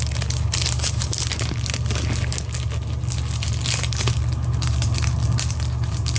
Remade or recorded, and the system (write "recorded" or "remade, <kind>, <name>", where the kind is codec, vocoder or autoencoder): recorded